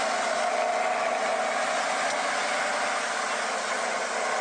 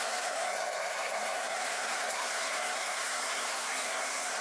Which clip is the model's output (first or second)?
second